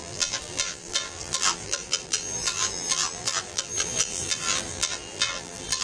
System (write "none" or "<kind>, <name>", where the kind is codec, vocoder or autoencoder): vocoder, BigVGAN v2